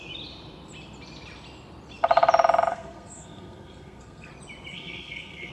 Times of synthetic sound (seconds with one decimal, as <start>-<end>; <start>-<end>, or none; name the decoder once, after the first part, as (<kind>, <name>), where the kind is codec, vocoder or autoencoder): 2.7-4.3 (codec, SNAC); 4.7-5.5

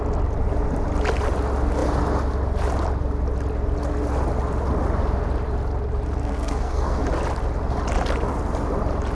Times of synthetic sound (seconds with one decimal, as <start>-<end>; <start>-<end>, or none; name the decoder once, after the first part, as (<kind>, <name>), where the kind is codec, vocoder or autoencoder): 6.2-7.0 (codec, SNAC)